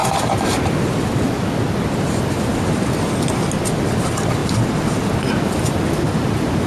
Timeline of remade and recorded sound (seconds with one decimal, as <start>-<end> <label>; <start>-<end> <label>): 0.0-6.7 recorded